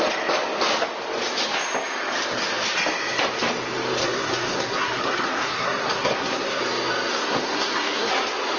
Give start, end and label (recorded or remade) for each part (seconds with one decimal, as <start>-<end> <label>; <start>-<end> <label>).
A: 0.0-4.0 recorded; 4.0-6.6 remade; 6.6-7.1 recorded; 7.1-8.1 remade; 8.1-8.6 recorded